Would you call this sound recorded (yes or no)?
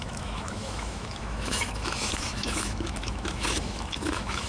no